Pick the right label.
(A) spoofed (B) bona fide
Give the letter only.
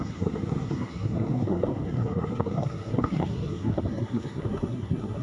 A